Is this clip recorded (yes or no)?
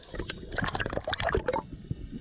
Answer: yes